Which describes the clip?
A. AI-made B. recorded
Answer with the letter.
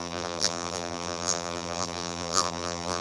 A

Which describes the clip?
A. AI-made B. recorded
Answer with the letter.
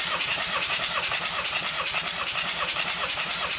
A